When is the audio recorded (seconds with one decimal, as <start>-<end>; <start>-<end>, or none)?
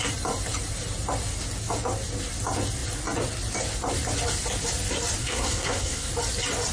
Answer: 0.0-5.2; 6.1-6.7